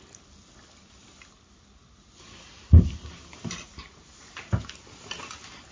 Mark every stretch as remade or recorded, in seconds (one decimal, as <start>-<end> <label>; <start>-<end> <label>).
0.0-5.7 recorded